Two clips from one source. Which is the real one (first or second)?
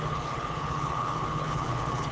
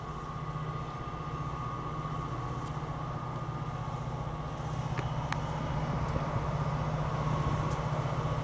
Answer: second